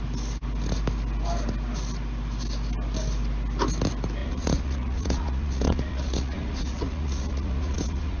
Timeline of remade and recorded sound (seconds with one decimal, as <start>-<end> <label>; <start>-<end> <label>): 0.0-4.2 recorded; 4.2-8.2 remade